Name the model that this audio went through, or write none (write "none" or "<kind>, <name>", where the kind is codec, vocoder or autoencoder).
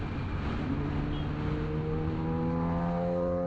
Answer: none